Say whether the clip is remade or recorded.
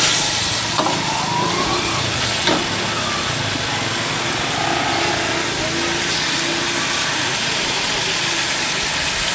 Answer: recorded